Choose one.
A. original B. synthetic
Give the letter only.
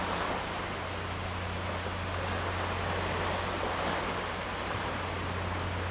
A